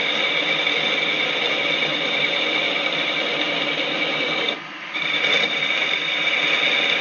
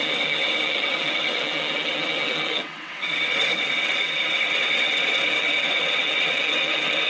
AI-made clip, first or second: second